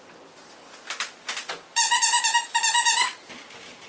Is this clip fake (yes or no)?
no